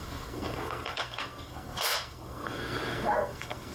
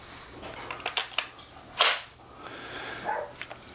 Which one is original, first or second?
second